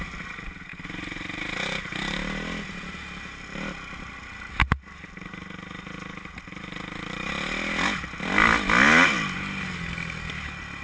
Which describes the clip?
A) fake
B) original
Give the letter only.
B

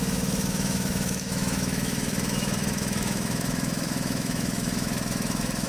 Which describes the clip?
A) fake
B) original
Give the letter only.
A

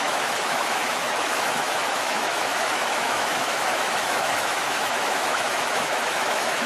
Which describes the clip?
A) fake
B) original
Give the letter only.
A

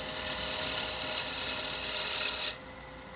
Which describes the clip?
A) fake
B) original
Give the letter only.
B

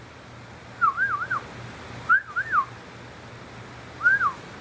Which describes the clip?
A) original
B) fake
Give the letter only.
A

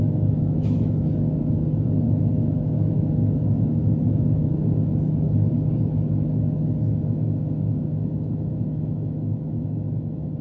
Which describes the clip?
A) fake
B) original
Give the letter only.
A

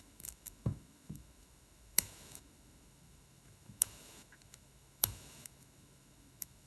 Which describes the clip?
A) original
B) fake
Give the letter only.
B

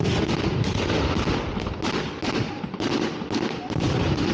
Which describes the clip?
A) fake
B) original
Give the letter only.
B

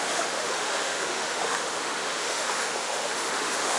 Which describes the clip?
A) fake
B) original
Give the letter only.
A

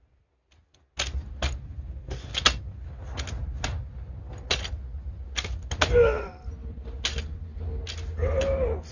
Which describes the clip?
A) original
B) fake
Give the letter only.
A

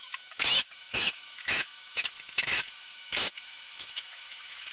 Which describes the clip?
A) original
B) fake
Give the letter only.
B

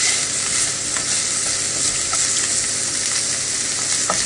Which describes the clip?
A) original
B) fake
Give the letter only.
A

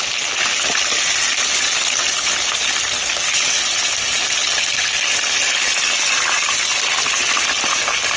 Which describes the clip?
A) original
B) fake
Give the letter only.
A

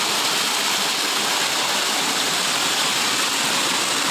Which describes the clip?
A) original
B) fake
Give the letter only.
A